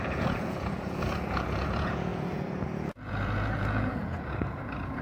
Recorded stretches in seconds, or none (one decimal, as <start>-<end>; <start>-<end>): none